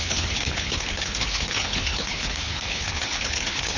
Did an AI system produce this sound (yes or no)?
yes